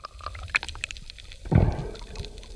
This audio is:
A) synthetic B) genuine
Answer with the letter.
B